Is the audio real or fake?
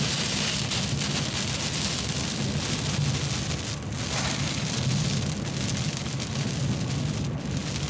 real